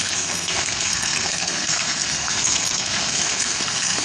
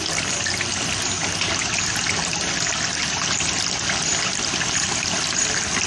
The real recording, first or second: second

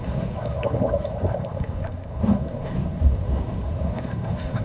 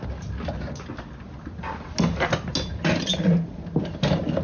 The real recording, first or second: second